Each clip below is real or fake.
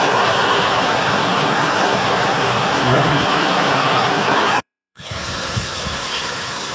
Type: fake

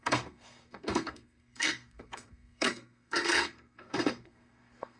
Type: fake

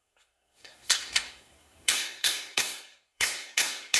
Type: fake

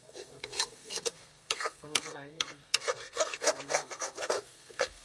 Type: fake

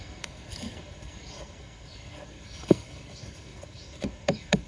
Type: fake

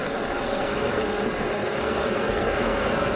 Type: fake